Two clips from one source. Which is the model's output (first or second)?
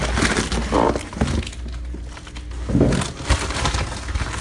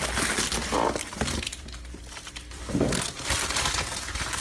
second